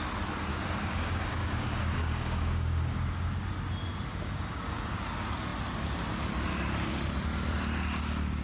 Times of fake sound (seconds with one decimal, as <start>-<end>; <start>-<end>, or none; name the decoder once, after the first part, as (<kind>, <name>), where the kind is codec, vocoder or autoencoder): 0.5-3.5 (codec, DAC); 4.1-5.0